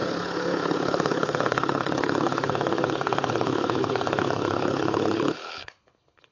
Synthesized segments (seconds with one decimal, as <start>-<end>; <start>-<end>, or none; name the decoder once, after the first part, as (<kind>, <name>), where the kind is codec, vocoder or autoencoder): 0.0-6.3 (codec, HILCodec)